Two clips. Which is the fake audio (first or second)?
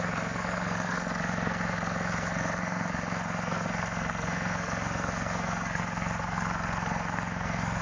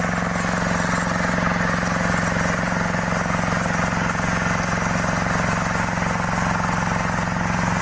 first